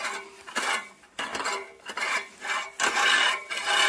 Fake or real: real